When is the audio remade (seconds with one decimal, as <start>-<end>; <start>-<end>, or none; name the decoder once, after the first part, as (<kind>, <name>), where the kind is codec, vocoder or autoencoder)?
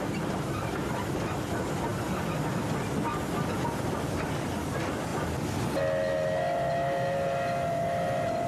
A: none